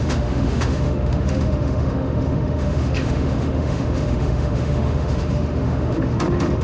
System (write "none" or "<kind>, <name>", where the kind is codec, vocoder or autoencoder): autoencoder, DAC-VAE